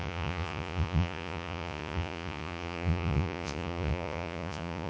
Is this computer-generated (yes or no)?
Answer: yes